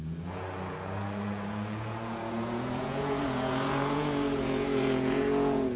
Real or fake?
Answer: fake